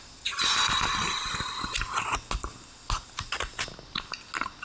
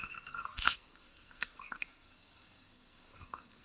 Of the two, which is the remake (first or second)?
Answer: second